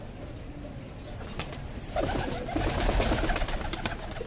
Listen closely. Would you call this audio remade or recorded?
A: recorded